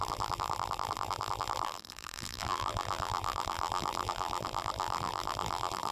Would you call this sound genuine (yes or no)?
no